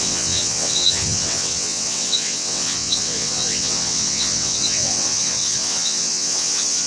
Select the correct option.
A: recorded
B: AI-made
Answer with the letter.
B